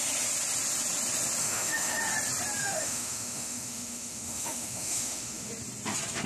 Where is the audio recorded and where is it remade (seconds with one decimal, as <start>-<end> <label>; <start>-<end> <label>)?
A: 0.0-1.4 recorded; 1.4-2.0 remade; 2.0-2.6 recorded; 2.6-5.5 remade; 5.5-6.3 recorded